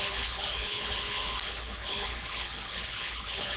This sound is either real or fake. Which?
fake